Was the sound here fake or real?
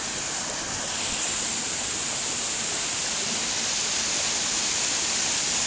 real